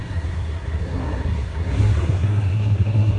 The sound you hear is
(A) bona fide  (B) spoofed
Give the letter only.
B